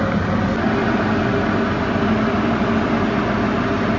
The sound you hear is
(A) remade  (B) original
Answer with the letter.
B